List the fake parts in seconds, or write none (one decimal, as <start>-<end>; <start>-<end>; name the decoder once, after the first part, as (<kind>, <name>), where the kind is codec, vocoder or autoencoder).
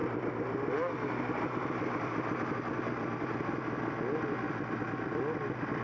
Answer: none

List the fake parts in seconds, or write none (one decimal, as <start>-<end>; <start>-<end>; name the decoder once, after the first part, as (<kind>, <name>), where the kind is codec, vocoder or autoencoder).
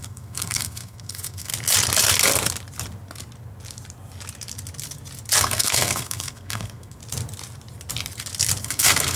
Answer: 0.0-1.5 (codec, SNAC); 5.4-7.0; 8.6-9.2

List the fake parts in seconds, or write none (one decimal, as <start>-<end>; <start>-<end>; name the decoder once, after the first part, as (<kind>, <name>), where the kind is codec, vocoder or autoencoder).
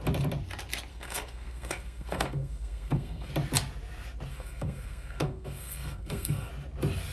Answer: 0.9-3.3 (codec, SNAC); 4.3-6.5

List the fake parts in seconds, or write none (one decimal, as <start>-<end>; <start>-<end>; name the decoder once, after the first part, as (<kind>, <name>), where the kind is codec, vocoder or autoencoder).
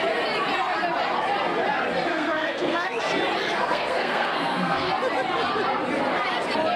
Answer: 2.1-3.0 (codec, SNAC); 3.6-4.9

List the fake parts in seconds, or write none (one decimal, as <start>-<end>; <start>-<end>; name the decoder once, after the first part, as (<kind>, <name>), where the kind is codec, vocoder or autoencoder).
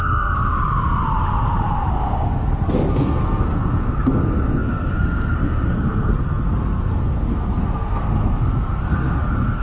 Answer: 0.0-0.5 (codec, SNAC); 1.9-9.6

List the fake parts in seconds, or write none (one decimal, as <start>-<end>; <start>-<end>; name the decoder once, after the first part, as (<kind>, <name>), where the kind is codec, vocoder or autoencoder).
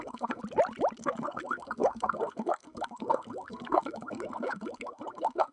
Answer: 0.0-0.4 (codec, SNAC); 1.0-5.5